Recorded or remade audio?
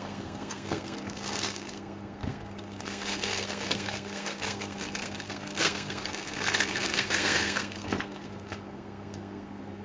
remade